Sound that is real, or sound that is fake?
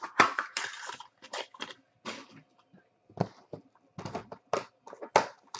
real